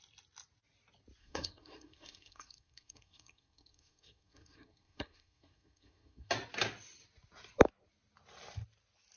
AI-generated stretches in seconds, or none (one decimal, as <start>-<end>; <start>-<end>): 1.2-6.3